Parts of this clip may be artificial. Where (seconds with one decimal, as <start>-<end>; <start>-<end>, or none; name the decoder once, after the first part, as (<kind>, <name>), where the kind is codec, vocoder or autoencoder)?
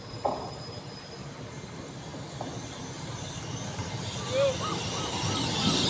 none